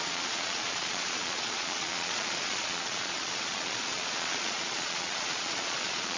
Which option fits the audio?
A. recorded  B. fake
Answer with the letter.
B